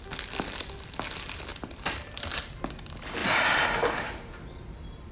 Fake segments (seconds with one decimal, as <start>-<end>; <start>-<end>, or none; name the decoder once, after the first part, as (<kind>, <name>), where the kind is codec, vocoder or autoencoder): 1.5-2.5 (vocoder, BigVGAN v2); 3.2-5.1